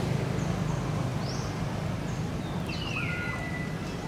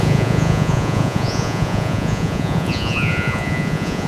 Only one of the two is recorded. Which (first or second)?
first